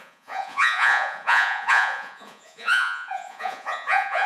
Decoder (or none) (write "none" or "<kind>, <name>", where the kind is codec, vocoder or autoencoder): vocoder, Vocos